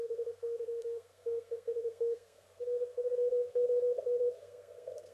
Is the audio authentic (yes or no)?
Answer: no